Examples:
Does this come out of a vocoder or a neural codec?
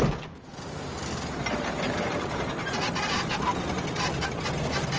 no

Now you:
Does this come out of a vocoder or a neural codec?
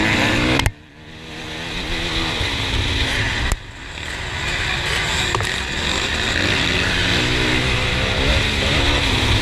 no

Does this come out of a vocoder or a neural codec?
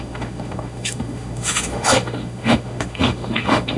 yes